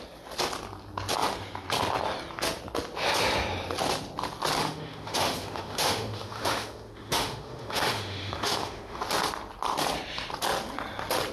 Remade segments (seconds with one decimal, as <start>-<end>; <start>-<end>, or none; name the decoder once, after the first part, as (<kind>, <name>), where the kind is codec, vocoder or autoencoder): 4.6-9.0 (autoencoder, DAC-VAE)